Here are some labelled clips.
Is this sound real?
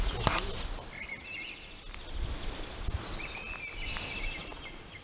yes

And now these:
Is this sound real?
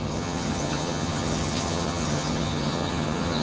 no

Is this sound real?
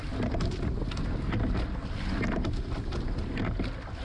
yes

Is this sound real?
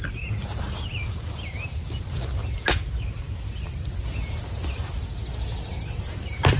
yes